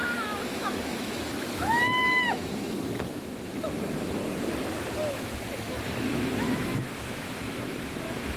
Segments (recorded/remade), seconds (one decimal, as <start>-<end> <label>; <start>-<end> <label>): 0.0-4.2 remade; 4.2-4.9 recorded; 4.9-8.4 remade

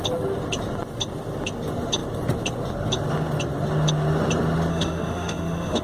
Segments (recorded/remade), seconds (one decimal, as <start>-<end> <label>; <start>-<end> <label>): 0.0-4.7 recorded; 4.7-5.8 remade

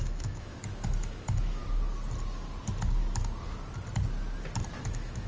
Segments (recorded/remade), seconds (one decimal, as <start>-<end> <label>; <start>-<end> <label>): 0.0-1.6 remade; 1.6-4.8 recorded; 4.8-5.3 remade

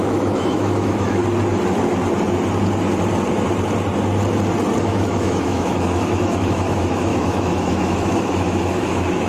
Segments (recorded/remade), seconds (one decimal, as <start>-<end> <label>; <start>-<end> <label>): 0.0-1.2 remade; 1.2-4.8 recorded; 4.8-9.3 remade